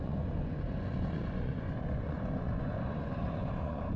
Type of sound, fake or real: fake